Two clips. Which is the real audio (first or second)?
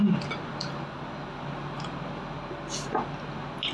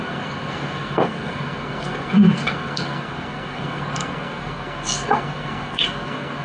first